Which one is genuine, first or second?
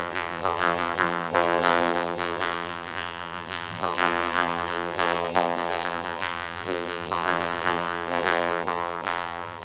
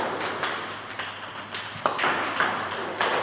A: second